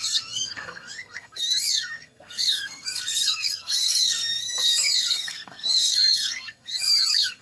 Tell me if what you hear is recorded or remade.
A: remade